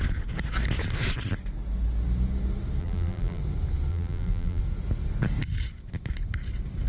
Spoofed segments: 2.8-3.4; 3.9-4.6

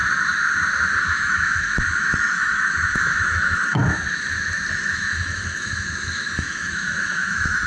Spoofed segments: 1.0-3.8; 4.7-7.7

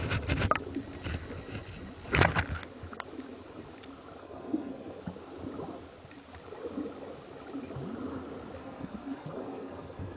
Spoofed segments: 4.2-5.0; 8.6-10.2

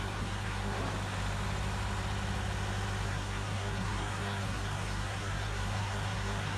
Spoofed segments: 0.0-0.8; 3.0-6.6